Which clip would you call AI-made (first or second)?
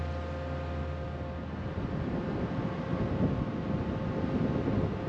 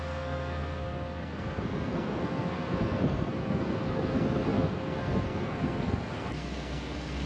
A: second